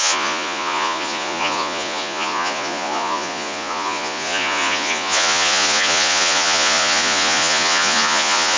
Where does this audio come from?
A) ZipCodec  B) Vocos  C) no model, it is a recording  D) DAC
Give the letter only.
B